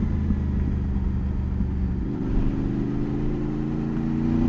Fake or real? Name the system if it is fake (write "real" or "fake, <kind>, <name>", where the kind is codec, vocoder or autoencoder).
real